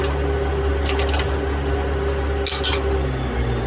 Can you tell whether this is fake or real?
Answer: real